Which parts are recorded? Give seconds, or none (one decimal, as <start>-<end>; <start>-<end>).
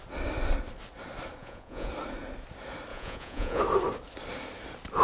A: 0.0-1.4; 1.9-2.9; 3.6-5.0